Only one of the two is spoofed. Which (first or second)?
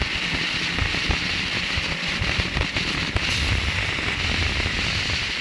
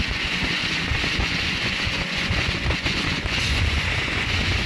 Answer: second